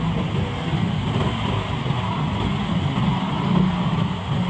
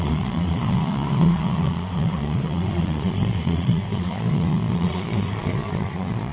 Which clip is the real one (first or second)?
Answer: first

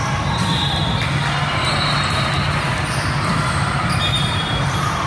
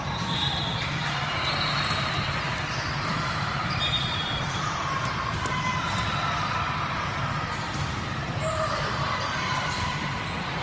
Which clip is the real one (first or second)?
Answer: first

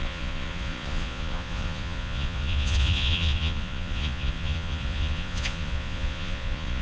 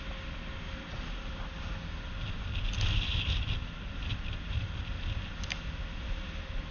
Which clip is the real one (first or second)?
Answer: second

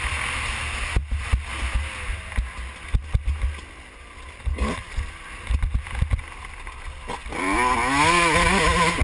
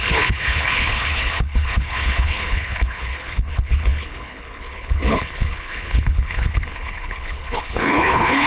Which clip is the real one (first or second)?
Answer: first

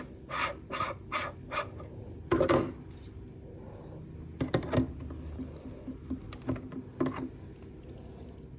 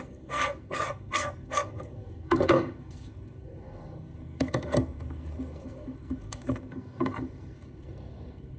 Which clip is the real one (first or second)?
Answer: first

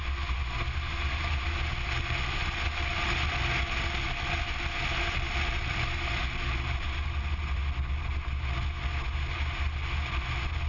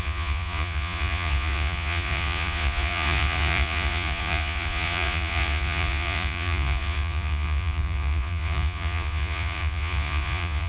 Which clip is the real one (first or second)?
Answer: first